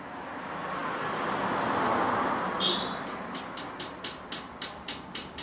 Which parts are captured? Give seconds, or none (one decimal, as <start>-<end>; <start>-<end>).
0.0-5.4